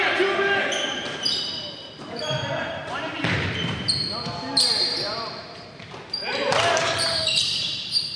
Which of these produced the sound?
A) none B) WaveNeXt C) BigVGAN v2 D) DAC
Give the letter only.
C